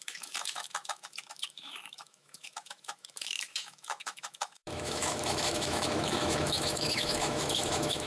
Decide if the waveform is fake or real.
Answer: fake